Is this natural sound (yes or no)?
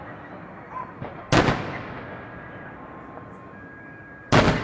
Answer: yes